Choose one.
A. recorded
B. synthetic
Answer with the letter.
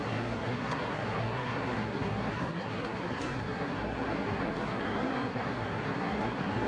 B